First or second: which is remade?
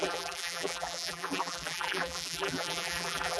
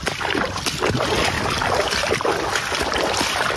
first